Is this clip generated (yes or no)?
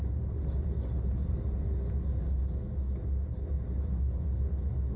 no